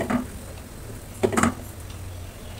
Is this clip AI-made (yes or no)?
no